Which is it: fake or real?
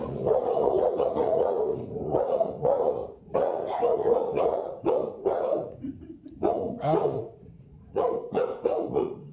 fake